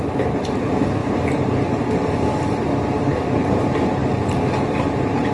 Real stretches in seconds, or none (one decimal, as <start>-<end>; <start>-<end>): none